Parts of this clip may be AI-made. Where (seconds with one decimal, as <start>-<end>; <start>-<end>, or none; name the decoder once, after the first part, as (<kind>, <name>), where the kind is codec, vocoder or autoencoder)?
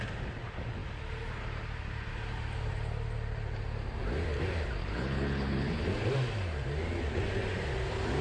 4.8-5.8 (codec, HILCodec)